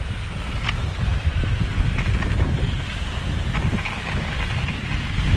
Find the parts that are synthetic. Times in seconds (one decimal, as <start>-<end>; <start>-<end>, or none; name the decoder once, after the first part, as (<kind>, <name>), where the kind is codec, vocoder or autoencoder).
none